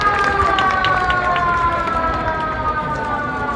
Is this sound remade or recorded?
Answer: recorded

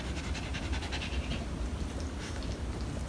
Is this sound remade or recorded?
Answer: recorded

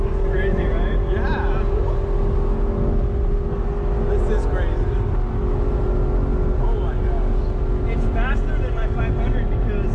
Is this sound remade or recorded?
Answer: recorded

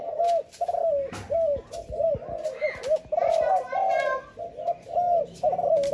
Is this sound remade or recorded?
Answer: recorded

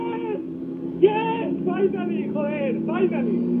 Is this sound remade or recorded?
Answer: recorded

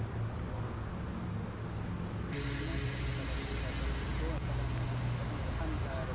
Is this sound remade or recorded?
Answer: recorded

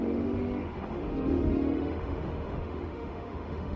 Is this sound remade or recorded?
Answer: remade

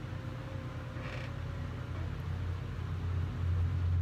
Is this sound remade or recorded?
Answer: recorded